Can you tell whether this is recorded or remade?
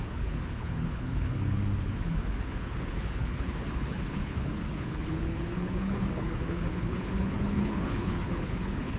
remade